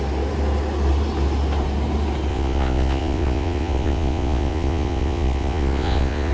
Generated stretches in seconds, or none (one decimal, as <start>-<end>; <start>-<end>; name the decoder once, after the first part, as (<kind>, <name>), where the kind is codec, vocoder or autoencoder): 2.3-6.3 (vocoder, Vocos)